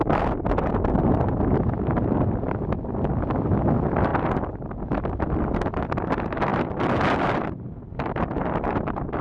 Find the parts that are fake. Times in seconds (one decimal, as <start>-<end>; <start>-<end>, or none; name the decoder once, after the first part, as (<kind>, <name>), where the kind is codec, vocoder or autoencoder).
none